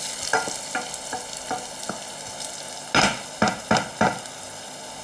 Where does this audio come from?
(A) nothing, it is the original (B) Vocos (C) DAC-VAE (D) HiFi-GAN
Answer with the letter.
A